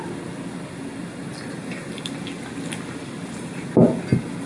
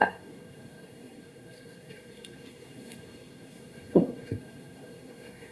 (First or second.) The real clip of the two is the first